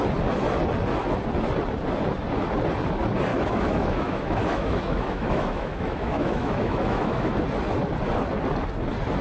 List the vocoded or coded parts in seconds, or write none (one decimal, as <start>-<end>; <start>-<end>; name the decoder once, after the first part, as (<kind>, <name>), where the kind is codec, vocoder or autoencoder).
3.3-7.4 (autoencoder, DAC-VAE)